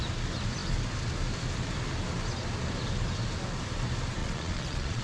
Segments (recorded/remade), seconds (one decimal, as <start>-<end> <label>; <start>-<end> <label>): 0.0-4.2 recorded; 4.2-5.0 remade